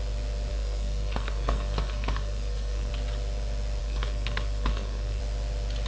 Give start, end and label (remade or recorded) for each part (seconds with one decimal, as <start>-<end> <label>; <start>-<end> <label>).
0.0-0.5 recorded; 0.5-2.9 remade; 2.9-3.8 recorded; 3.8-5.2 remade; 5.2-5.9 recorded